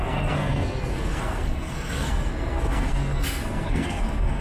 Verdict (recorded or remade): remade